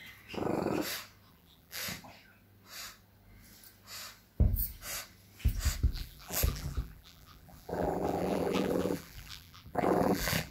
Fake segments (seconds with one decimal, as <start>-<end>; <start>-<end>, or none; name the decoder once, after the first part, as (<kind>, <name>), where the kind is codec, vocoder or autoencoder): 1.3-1.8 (vocoder, BigVGAN v2); 5.9-10.5